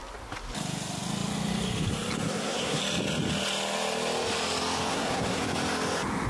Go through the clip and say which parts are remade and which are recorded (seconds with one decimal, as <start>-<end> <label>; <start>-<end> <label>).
0.0-2.3 recorded; 2.3-2.8 remade; 2.8-4.9 recorded; 4.9-5.4 remade; 5.4-6.3 recorded